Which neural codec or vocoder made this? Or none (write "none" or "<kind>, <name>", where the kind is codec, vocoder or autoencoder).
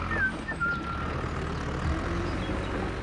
none